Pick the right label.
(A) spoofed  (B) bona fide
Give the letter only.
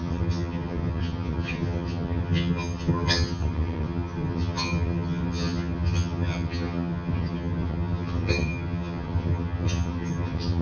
A